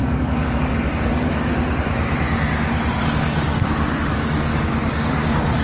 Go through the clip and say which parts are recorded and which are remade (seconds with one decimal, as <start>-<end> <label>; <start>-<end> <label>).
0.0-1.5 remade; 1.5-3.0 recorded; 3.0-5.6 remade